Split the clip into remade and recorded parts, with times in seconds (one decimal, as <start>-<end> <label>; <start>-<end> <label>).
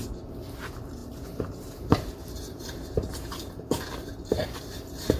0.0-1.0 recorded; 1.0-4.1 remade; 4.1-5.2 recorded